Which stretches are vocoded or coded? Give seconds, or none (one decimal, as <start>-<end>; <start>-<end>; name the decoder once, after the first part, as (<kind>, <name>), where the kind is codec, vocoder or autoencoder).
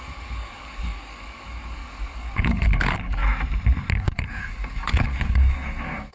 0.0-3.2 (codec, DAC); 3.9-6.1